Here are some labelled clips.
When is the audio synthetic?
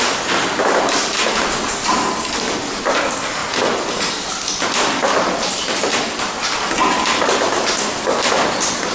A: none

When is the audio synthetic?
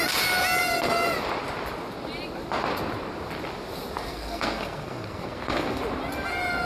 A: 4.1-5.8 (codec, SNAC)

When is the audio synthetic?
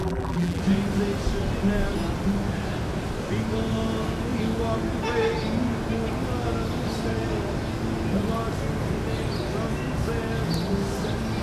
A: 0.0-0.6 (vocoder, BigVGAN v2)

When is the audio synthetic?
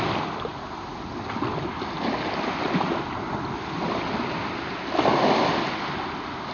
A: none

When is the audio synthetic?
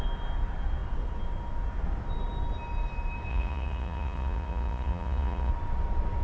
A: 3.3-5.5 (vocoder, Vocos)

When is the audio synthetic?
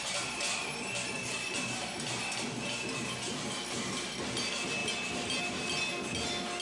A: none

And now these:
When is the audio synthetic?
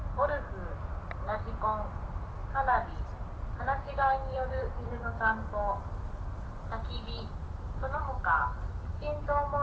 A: 2.4-3.6 (vocoder, BigVGAN v2); 4.2-6.7; 7.4-8.2